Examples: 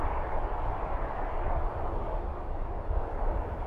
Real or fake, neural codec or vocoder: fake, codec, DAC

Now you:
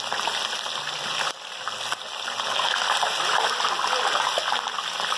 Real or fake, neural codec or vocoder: real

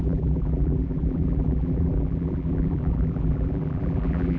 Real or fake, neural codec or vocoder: fake, vocoder, BigVGAN v2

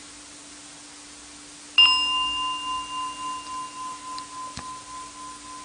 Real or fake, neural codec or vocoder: real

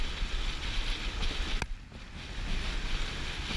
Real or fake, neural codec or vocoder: real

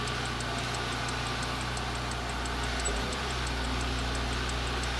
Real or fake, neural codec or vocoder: real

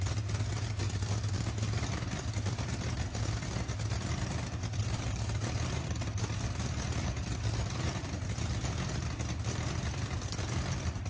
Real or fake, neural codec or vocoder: fake, vocoder, BigVGAN v2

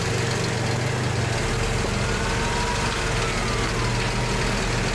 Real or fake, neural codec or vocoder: real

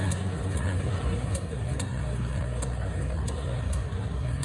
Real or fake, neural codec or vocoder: fake, codec, SNAC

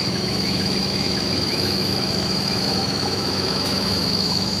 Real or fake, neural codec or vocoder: fake, autoencoder, DAC-VAE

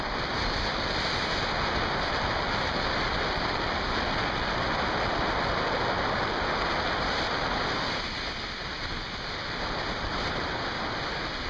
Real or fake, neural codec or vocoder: real